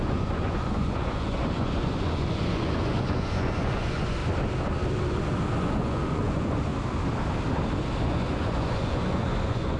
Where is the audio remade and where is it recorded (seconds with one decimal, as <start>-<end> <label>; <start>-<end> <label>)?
0.0-4.2 remade; 4.2-5.6 recorded; 5.6-6.7 remade; 6.7-8.0 recorded; 8.0-9.8 remade